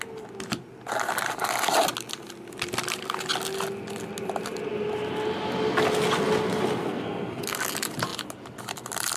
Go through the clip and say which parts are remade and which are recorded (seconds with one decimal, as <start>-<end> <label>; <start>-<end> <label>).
0.0-6.8 recorded; 6.8-7.4 remade; 7.4-9.2 recorded